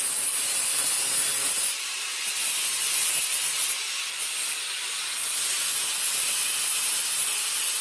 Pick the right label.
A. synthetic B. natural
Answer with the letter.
B